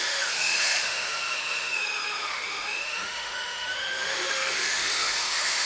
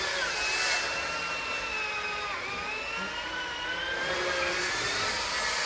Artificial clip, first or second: first